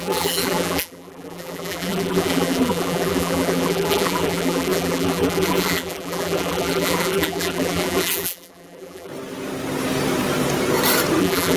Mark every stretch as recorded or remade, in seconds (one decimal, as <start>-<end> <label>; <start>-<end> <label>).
0.0-9.1 remade; 9.1-11.2 recorded; 11.2-11.6 remade